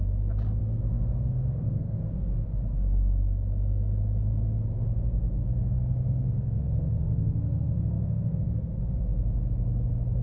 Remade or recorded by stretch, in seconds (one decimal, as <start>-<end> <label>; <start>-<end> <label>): 0.0-0.6 recorded; 0.6-2.0 remade; 2.0-5.4 recorded; 5.4-8.4 remade; 8.4-10.2 recorded